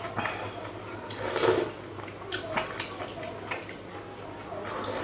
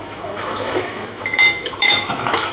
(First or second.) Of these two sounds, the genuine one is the first